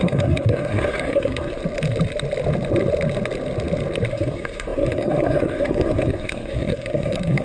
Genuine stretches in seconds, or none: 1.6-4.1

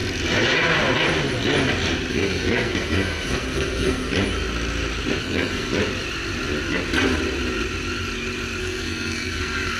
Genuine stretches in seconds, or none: 0.0-2.1; 4.1-5.2; 5.7-8.6

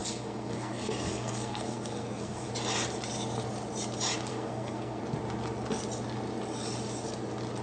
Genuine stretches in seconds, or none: 2.5-4.3; 5.0-7.6

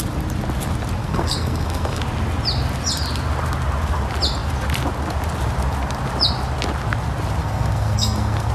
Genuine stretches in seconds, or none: 0.0-1.0; 2.0-7.4